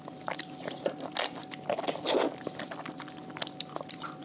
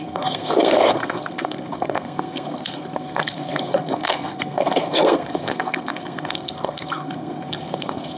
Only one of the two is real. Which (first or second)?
first